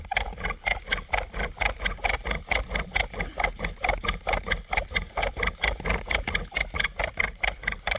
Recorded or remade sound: recorded